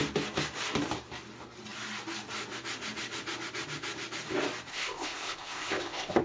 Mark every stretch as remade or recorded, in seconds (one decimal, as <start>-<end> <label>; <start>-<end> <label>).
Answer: 0.0-4.7 recorded; 4.7-6.2 remade